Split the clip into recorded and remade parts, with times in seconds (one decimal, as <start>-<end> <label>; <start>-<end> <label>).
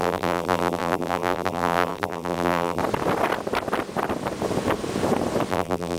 0.0-2.8 remade; 2.8-5.5 recorded; 5.5-6.0 remade